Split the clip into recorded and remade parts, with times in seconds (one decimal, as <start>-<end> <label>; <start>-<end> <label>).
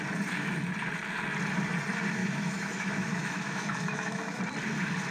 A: 0.0-2.2 recorded; 2.2-4.4 remade; 4.4-5.1 recorded